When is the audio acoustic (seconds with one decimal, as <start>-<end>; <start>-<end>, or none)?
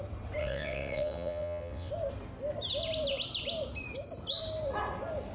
0.0-0.4; 1.9-5.3